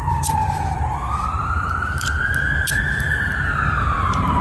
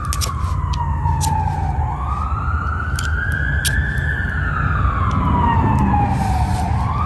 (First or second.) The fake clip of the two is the first